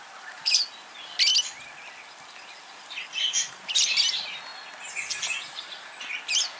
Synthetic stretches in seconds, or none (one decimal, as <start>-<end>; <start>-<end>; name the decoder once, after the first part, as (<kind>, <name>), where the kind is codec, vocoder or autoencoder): none